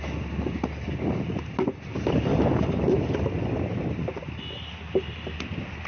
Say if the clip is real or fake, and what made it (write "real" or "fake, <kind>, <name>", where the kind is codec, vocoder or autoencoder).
real